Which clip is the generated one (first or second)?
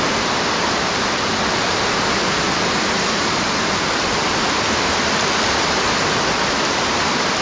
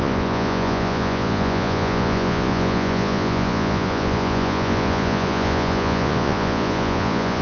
second